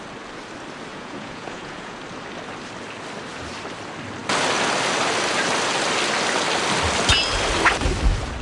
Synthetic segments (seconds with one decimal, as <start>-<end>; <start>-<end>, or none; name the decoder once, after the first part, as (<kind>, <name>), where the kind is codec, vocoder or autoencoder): 0.9-2.0 (vocoder, Vocos)